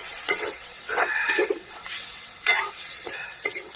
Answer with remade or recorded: remade